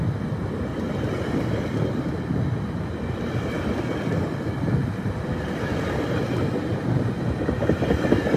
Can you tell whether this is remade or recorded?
recorded